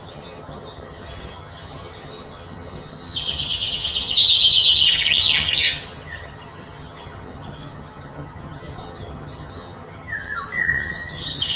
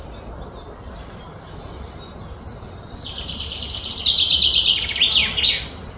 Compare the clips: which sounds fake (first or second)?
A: first